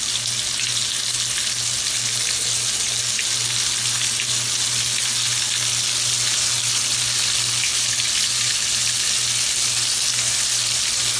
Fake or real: real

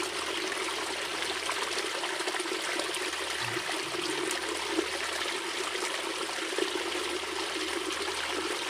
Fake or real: real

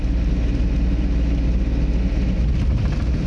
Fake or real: real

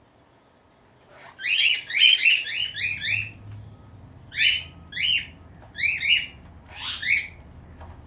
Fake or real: real